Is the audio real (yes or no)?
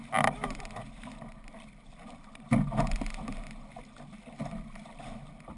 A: yes